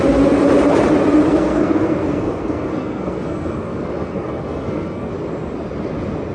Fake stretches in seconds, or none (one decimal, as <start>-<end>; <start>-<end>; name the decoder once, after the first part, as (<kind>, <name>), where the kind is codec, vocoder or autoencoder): 1.3-5.1 (codec, SNAC)